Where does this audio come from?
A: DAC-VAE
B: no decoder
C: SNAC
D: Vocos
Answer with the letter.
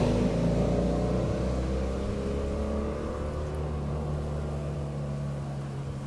B